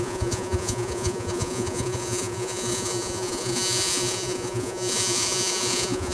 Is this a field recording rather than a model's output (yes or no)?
no